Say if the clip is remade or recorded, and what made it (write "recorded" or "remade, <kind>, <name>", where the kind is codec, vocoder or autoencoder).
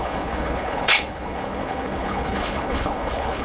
remade, codec, HILCodec